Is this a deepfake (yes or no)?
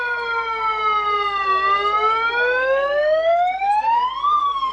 no